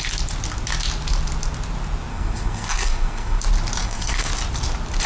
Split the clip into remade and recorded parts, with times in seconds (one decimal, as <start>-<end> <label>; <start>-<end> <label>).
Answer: 0.0-2.1 recorded; 2.1-3.4 remade; 3.4-3.8 recorded; 3.8-4.3 remade; 4.3-5.1 recorded